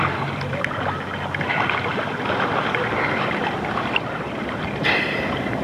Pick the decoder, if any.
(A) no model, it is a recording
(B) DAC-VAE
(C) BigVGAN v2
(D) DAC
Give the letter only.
A